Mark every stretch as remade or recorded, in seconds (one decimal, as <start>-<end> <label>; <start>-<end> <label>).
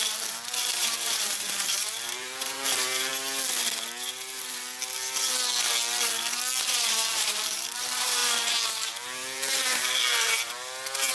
0.0-3.1 remade; 3.1-6.9 recorded; 6.9-11.1 remade